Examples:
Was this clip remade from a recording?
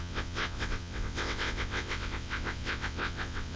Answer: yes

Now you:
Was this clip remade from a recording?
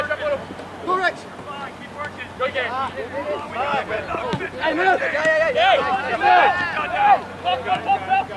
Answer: no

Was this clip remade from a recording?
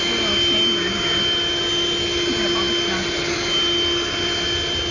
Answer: no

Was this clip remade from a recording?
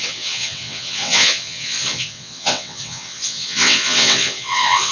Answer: yes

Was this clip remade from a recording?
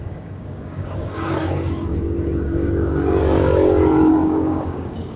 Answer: yes